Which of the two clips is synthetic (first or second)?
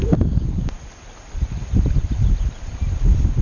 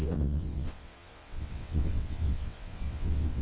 second